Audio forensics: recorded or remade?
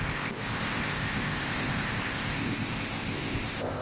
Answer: remade